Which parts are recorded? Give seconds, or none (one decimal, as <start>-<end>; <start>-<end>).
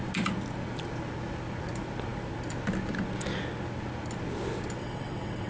0.0-4.8